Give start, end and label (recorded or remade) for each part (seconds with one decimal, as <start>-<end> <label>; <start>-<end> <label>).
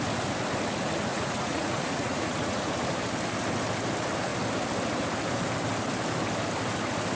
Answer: 0.0-1.1 recorded; 1.1-2.7 remade; 2.7-7.1 recorded